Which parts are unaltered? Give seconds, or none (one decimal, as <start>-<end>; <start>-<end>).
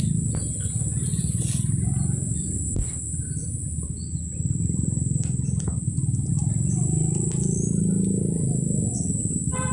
0.0-9.7